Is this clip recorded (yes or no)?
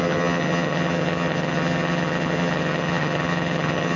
no